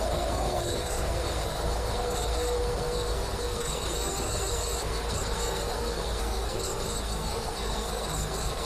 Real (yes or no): no